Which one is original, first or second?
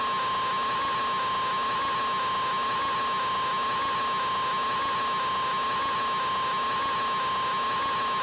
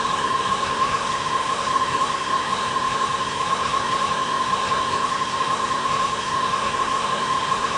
first